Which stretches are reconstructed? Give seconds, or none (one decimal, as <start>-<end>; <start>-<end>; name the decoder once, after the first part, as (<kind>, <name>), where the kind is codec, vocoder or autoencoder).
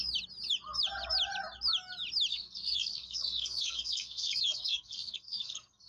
2.3-5.9 (codec, SNAC)